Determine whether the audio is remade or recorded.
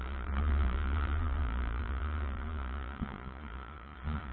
remade